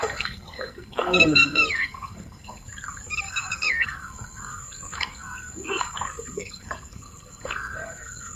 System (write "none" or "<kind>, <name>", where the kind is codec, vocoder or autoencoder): codec, SNAC